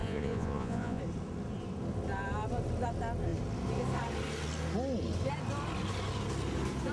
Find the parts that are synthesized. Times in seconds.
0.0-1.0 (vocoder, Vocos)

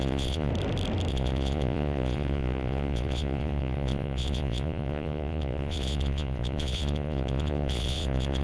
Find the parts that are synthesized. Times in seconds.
0.0-0.5 (vocoder, Vocos); 1.1-8.4

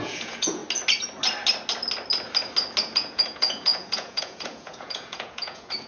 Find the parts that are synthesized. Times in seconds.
0.0-0.6 (vocoder, Vocos); 2.8-5.9

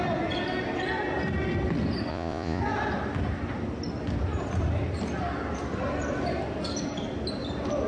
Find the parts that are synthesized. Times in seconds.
2.1-2.6 (vocoder, Vocos)

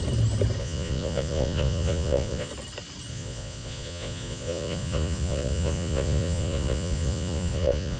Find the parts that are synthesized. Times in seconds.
0.6-2.5 (vocoder, Vocos); 3.1-8.0

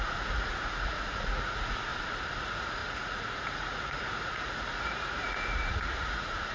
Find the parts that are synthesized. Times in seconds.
0.0-1.9 (vocoder, Vocos); 2.4-6.5